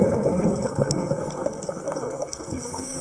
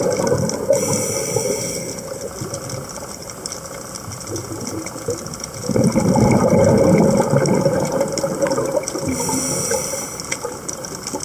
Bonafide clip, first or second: second